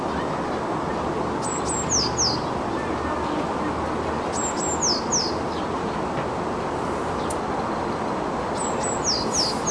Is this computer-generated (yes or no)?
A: no